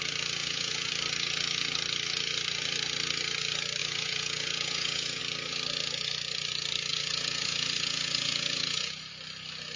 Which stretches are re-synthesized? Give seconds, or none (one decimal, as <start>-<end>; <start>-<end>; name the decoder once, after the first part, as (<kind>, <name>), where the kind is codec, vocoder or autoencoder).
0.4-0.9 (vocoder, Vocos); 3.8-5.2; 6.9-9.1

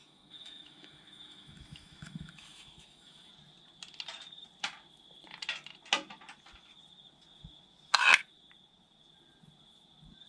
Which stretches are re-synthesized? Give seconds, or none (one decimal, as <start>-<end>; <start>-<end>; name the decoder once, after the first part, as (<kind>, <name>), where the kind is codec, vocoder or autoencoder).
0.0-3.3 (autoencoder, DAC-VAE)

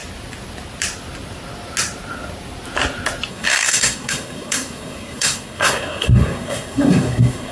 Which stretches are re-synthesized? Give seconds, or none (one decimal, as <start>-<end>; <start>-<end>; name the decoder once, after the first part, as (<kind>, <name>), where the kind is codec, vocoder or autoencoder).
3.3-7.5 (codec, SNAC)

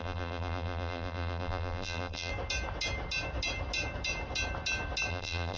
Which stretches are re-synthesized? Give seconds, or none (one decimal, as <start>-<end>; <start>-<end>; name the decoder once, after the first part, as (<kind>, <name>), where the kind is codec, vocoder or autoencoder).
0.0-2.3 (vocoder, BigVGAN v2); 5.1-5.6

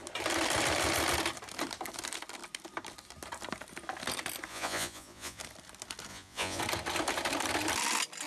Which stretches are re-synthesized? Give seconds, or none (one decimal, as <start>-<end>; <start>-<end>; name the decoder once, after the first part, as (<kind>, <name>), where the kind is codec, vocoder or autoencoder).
4.5-5.4 (vocoder, Vocos); 6.1-6.6

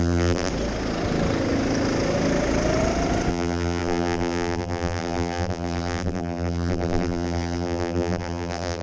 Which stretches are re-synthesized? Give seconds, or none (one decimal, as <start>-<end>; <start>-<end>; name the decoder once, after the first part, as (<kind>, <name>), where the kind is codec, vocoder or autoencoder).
0.0-0.5 (vocoder, BigVGAN v2); 3.3-8.8

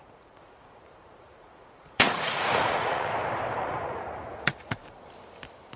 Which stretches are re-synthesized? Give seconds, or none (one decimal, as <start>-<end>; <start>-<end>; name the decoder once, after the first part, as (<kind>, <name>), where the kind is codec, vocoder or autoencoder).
0.0-3.1 (vocoder, Vocos); 3.6-4.8